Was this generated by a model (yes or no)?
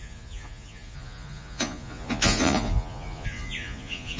yes